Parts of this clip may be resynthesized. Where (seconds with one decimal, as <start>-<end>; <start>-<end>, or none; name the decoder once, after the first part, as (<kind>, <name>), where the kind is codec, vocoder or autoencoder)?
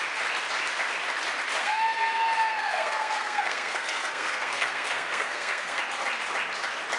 1.6-5.8 (codec, SNAC)